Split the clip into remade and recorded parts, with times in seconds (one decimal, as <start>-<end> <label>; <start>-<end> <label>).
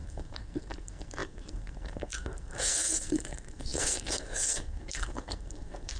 0.0-6.0 remade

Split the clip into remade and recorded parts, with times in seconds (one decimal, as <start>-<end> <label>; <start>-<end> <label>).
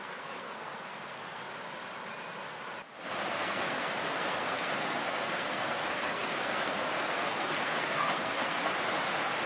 0.0-1.4 remade; 1.4-3.3 recorded; 3.3-8.7 remade; 8.7-9.5 recorded